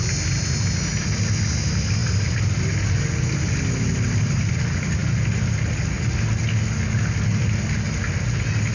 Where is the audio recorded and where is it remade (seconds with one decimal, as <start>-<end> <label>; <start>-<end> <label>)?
0.0-8.7 recorded